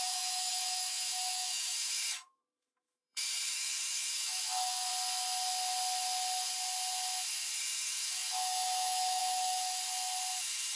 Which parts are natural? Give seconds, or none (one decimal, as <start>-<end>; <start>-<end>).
4.9-7.6; 9.8-10.3